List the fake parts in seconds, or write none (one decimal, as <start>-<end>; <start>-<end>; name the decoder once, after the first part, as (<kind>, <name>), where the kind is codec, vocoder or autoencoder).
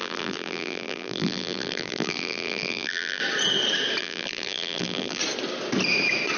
0.0-3.2 (vocoder, BigVGAN v2); 4.0-5.2